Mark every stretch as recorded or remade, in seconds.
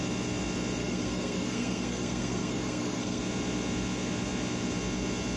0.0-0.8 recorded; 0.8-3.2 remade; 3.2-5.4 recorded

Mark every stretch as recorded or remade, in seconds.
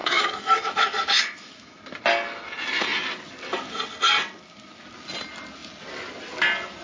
0.0-1.8 remade; 1.8-6.8 recorded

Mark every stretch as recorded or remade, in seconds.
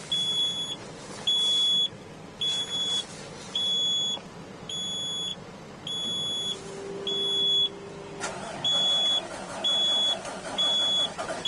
0.0-11.5 recorded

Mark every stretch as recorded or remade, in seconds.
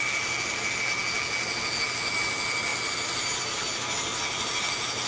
0.0-5.1 recorded